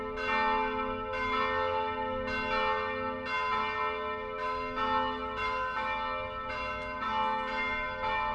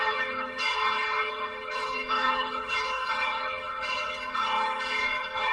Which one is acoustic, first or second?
first